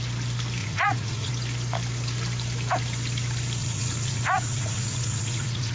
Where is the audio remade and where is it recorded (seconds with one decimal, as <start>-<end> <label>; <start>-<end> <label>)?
0.0-0.6 recorded; 0.6-1.3 remade; 1.3-3.6 recorded; 3.6-5.7 remade